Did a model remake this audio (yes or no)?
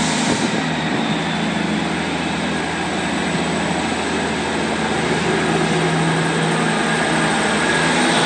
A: no